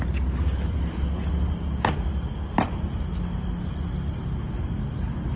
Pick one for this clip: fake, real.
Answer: real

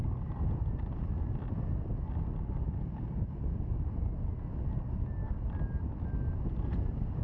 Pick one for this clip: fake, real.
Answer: real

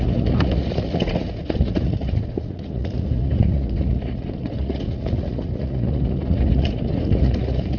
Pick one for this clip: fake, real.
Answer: fake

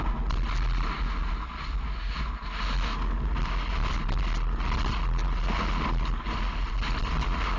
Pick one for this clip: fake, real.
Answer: real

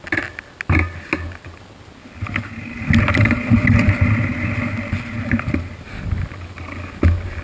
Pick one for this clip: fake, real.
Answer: real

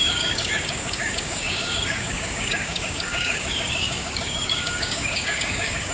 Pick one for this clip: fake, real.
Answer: fake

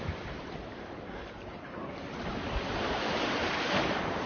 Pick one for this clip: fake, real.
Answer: fake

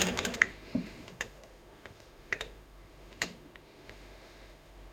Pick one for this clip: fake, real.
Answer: fake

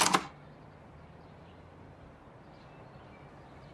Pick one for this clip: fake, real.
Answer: real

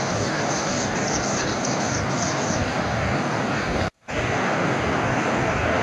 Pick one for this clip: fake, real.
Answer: fake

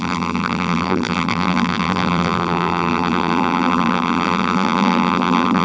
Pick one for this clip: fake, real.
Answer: fake